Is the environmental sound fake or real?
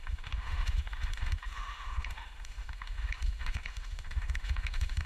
fake